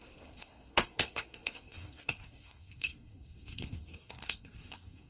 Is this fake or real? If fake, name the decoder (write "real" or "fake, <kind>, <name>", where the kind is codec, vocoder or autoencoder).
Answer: fake, codec, SNAC